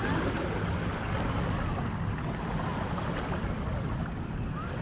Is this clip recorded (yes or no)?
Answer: yes